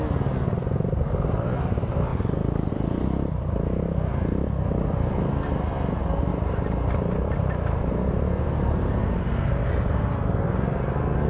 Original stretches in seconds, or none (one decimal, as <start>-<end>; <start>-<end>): 0.0-2.1; 2.7-6.3; 9.1-11.3